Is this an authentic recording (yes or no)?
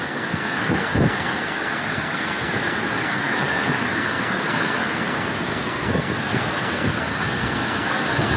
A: no